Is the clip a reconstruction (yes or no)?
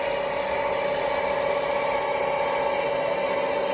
no